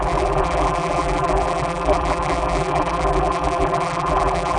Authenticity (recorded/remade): remade